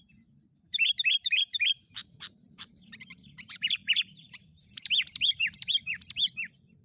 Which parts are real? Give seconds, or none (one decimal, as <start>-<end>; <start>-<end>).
none